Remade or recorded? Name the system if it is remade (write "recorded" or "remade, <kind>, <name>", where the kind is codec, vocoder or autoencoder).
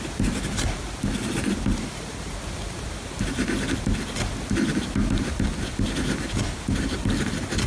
recorded